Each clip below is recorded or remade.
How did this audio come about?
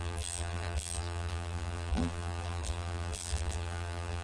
remade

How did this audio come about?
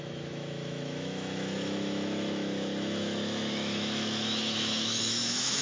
remade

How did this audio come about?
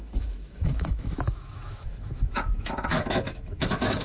remade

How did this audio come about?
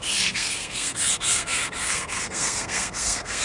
remade